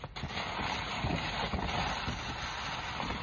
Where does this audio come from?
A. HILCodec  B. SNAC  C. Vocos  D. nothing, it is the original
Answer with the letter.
D